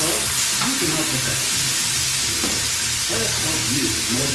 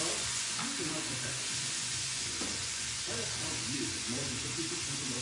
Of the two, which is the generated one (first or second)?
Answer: second